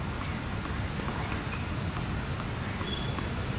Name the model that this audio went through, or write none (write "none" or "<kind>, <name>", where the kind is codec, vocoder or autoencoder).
none